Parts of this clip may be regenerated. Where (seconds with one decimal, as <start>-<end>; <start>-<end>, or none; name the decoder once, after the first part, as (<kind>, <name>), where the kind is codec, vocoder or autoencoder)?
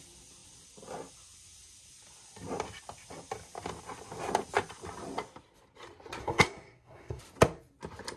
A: 6.2-7.2 (codec, SNAC)